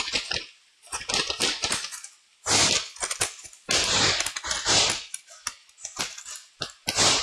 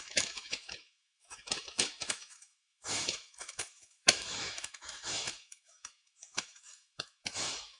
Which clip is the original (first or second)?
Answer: first